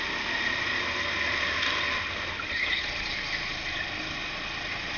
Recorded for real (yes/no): yes